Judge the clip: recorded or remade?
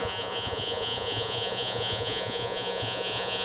remade